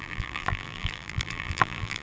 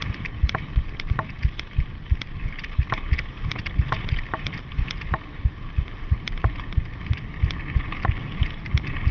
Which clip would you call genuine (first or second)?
second